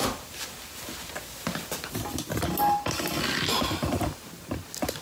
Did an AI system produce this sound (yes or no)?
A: no